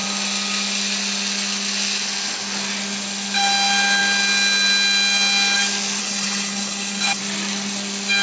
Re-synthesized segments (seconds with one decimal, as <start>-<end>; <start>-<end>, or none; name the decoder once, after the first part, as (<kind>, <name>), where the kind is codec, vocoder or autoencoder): 6.0-7.2 (codec, HILCodec)